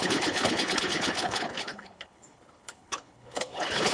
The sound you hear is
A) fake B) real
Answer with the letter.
A